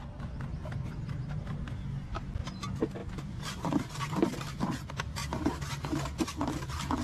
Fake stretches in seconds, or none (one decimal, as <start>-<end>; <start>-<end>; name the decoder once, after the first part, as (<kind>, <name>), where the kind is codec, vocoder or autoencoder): 0.5-1.3 (vocoder, BigVGAN v2); 3.0-4.4